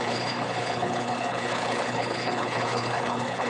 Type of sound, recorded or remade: remade